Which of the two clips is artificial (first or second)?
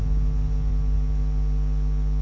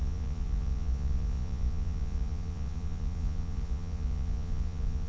second